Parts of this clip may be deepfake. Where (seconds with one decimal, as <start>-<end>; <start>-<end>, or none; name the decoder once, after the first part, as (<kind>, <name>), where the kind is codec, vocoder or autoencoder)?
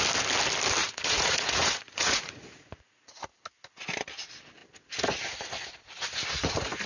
0.8-3.2 (vocoder, Vocos)